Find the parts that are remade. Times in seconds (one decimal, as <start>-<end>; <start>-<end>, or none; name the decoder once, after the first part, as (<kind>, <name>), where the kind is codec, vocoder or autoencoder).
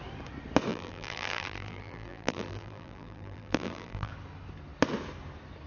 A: 0.7-4.1 (vocoder, BigVGAN v2)